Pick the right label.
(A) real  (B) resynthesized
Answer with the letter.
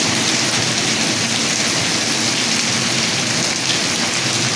A